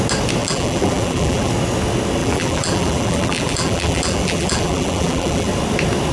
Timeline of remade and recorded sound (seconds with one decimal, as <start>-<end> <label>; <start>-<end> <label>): 0.0-0.4 recorded; 0.4-1.5 remade; 1.5-2.2 recorded; 2.2-5.5 remade; 5.5-6.1 recorded